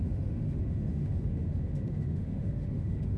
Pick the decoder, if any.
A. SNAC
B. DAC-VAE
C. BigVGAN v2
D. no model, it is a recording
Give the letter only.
B